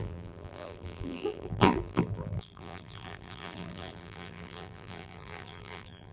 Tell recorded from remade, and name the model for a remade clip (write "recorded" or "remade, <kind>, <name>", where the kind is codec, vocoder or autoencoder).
remade, vocoder, BigVGAN v2